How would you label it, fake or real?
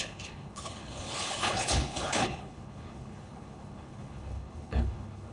fake